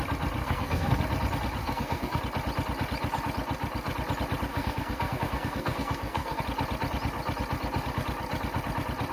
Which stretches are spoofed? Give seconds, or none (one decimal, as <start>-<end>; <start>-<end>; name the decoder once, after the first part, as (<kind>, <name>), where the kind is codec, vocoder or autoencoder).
0.4-0.9 (codec, SNAC); 1.6-2.2; 4.5-6.4